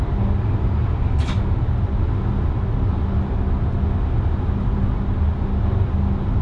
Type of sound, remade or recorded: recorded